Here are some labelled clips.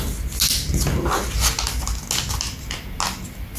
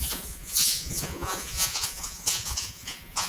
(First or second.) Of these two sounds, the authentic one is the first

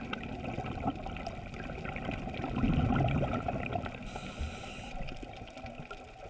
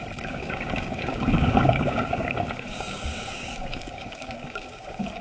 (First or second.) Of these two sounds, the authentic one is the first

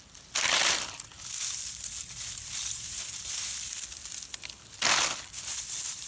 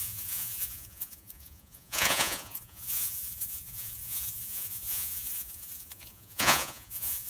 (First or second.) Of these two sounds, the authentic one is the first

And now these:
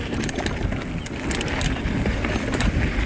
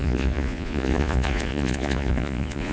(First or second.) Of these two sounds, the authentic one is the first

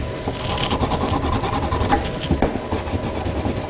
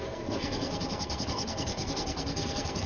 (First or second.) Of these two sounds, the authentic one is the first